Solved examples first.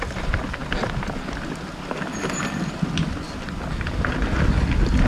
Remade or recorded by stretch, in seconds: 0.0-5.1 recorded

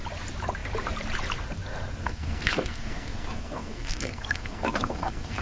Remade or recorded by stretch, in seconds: 0.0-2.0 recorded; 2.0-5.4 remade

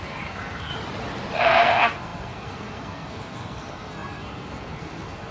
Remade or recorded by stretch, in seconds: 0.0-0.7 remade; 0.7-1.4 recorded; 1.4-5.3 remade

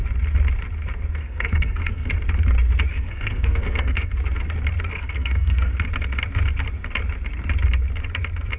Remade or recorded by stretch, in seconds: 0.0-1.2 recorded; 1.2-2.1 remade; 2.1-2.9 recorded; 2.9-4.1 remade; 4.1-4.9 recorded; 4.9-5.7 remade; 5.7-8.6 recorded